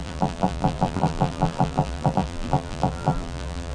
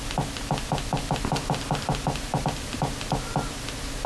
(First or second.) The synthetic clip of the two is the first